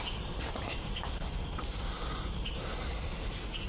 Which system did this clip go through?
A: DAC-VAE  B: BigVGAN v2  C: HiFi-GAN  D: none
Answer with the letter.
B